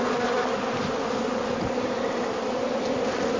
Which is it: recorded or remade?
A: recorded